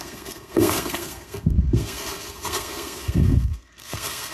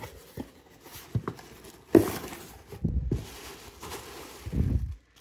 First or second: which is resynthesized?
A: first